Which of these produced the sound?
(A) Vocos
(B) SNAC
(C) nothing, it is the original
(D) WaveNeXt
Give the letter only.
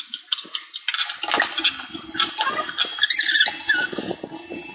C